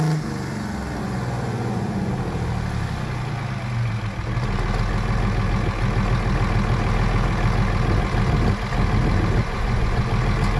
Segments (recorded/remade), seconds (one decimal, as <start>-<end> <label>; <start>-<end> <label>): 0.0-1.0 recorded; 1.0-2.1 remade; 2.1-9.4 recorded; 9.4-10.1 remade; 10.1-10.6 recorded